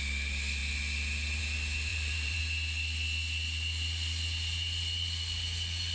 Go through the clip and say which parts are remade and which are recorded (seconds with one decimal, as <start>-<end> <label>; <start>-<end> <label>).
0.0-1.9 recorded; 1.9-2.4 remade; 2.4-5.9 recorded